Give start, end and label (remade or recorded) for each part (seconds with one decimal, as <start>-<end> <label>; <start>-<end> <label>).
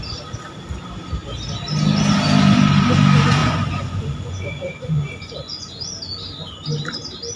0.0-3.4 recorded; 3.4-5.9 remade; 5.9-7.4 recorded